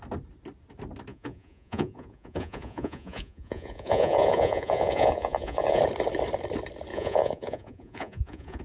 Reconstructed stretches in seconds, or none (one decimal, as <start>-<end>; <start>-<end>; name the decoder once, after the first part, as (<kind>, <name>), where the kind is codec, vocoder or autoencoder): 1.1-5.8 (vocoder, Vocos); 6.9-8.6